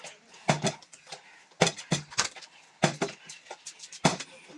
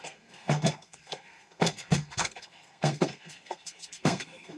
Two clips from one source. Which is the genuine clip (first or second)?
first